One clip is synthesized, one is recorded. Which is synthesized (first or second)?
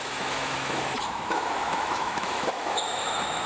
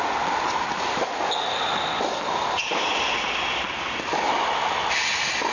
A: first